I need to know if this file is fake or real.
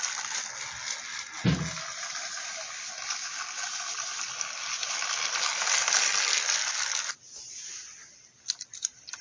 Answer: real